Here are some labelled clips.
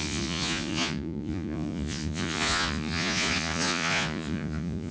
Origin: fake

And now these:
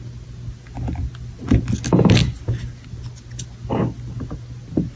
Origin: real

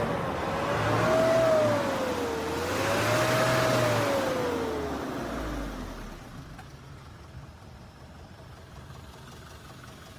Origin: real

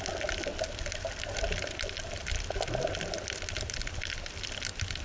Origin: real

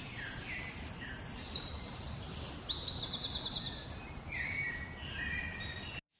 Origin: real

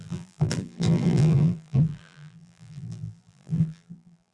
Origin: fake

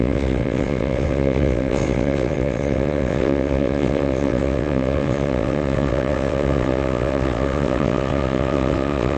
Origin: fake